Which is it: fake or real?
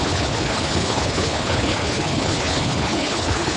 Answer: fake